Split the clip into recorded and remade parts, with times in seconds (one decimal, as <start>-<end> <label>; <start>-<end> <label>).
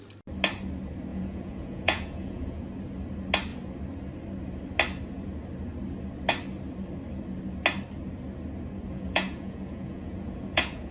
0.0-1.1 recorded; 1.1-2.6 remade; 2.6-8.9 recorded; 8.9-10.9 remade